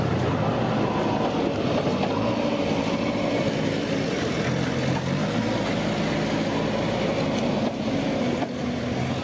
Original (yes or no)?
yes